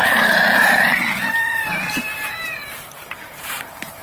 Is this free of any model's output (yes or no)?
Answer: no